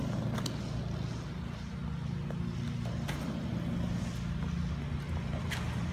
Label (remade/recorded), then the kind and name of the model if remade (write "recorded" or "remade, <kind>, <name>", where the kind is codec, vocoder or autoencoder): recorded